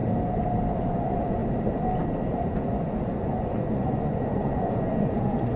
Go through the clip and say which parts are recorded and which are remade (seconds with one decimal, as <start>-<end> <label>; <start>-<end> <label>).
0.0-0.8 recorded; 0.8-1.4 remade; 1.4-2.3 recorded; 2.3-5.6 remade